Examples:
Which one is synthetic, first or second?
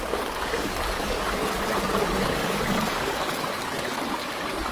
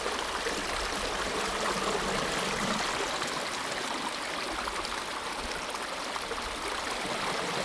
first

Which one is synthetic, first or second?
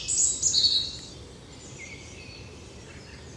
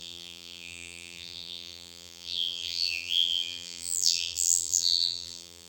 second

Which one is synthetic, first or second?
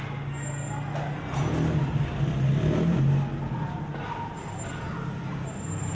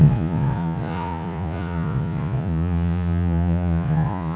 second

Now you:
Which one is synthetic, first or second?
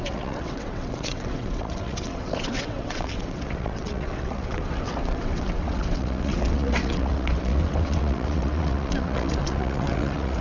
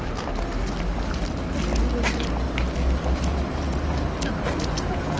first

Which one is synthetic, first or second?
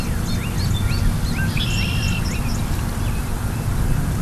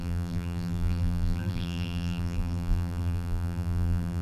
second